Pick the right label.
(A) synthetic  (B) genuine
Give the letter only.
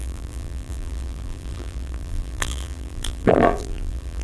A